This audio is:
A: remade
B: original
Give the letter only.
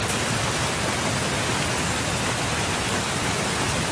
B